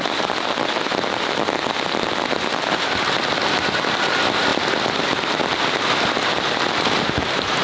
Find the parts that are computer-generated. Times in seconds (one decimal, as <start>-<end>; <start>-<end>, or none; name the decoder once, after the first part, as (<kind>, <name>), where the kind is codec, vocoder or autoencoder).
none